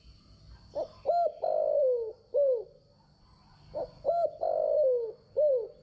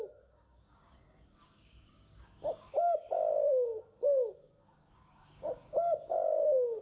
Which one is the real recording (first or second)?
first